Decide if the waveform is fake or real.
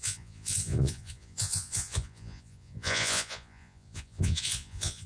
fake